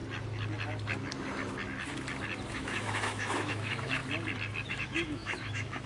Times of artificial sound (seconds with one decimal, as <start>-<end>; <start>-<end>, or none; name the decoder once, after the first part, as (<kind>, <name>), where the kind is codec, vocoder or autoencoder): 2.5-4.0 (autoencoder, DAC-VAE); 4.7-5.9